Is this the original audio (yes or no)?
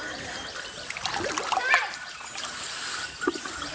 yes